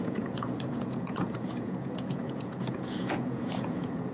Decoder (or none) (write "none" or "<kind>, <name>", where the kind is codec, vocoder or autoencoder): vocoder, Vocos